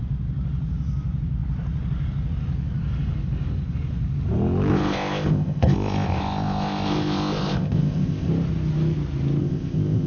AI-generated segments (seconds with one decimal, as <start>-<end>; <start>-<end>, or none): 4.7-8.3; 9.4-10.1